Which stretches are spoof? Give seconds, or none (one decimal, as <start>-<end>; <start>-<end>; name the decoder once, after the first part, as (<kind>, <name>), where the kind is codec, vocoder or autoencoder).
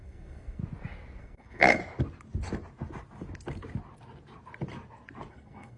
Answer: 0.0-0.6 (codec, SNAC); 1.2-1.8; 5.3-5.8